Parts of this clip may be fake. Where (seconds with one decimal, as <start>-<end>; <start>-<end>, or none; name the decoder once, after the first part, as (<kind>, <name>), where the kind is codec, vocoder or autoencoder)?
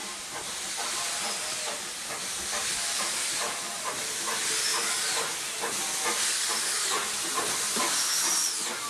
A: 0.0-1.9 (vocoder, BigVGAN v2); 2.6-4.2